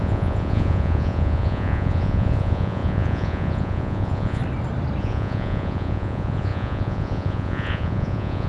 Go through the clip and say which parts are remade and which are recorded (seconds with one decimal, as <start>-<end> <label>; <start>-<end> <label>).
0.0-4.4 remade; 4.4-5.0 recorded; 5.0-8.5 remade